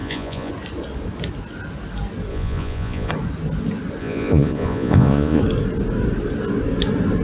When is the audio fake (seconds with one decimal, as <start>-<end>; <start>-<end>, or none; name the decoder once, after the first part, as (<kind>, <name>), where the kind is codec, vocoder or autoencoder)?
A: 0.0-0.5 (vocoder, Vocos); 2.3-3.1; 4.0-5.4